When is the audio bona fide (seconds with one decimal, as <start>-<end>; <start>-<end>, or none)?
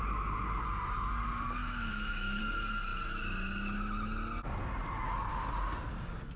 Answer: 0.0-1.6; 2.4-6.4